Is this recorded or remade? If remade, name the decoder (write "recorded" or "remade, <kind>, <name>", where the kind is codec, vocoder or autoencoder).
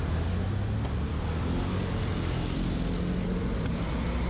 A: recorded